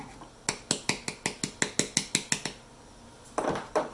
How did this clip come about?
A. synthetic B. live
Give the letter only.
B